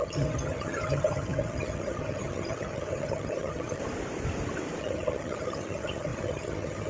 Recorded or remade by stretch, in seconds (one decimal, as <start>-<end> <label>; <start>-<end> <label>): 0.0-3.8 remade; 3.8-4.8 recorded; 4.8-6.9 remade